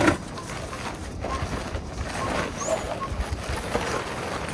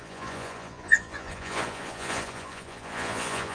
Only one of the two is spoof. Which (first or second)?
second